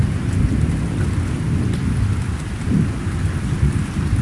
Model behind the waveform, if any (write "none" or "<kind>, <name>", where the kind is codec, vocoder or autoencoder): none